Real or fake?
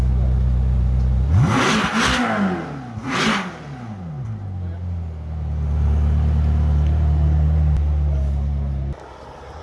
real